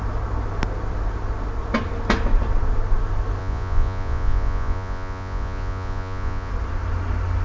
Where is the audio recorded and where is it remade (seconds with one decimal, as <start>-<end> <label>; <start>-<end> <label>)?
0.0-3.4 recorded; 3.4-6.5 remade; 6.5-7.4 recorded